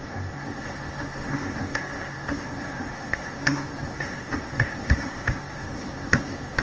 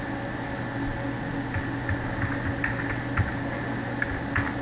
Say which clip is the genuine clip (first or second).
second